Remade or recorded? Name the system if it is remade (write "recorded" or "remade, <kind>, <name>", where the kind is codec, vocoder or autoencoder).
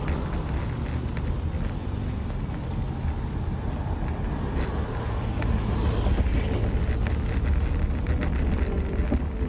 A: recorded